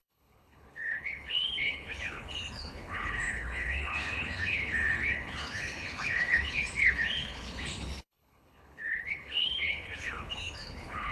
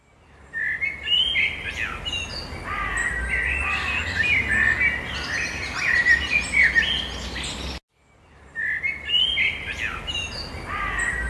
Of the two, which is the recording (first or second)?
second